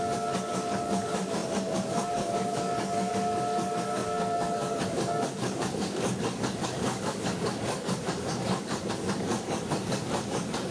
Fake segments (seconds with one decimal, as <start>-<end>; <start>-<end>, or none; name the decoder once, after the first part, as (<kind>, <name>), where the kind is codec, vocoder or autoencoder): 0.0-10.7 (codec, DAC)